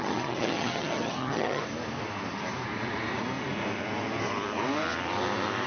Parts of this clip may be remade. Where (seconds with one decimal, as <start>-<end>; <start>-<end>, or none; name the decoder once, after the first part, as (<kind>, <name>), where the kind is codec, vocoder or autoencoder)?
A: 0.0-1.6 (vocoder, HiFi-GAN)